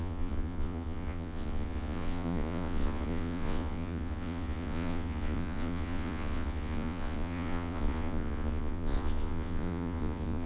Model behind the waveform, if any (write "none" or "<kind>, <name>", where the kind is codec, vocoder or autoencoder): vocoder, Vocos